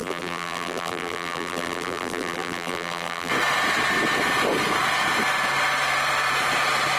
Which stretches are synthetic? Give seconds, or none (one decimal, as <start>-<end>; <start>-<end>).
0.0-3.3